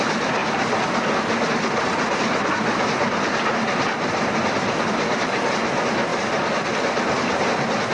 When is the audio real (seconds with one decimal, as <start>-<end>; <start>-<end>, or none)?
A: 0.0-7.9